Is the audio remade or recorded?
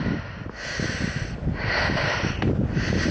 recorded